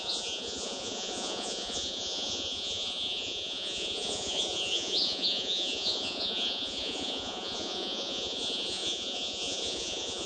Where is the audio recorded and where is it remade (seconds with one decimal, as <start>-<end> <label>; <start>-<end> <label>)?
0.0-10.3 remade